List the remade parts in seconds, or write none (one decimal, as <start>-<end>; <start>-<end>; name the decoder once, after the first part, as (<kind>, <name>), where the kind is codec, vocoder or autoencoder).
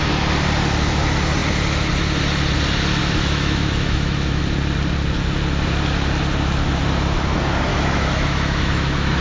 3.0-4.4 (autoencoder, DAC-VAE); 7.7-9.2